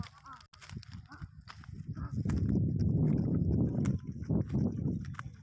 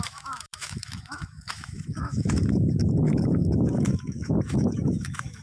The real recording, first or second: first